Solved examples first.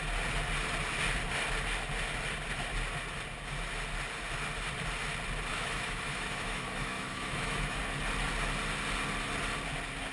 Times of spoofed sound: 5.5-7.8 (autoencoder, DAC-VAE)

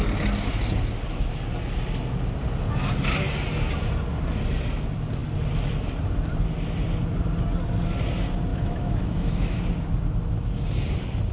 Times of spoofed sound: 8.5-9.6 (autoencoder, DAC-VAE)

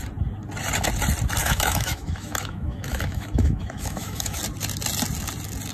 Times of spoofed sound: 1.4-4.4 (autoencoder, DAC-VAE)